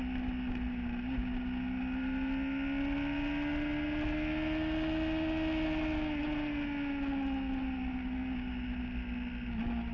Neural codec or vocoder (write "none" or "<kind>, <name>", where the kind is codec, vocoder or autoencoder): none